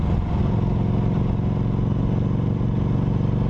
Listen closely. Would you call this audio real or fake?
real